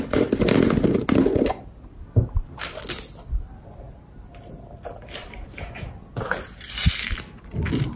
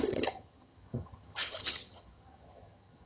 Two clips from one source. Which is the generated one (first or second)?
second